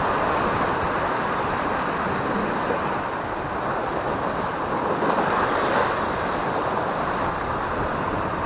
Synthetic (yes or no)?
no